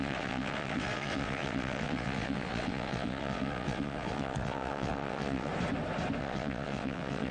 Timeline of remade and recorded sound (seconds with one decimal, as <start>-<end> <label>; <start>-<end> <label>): 0.0-5.5 remade; 5.5-6.2 recorded; 6.2-7.3 remade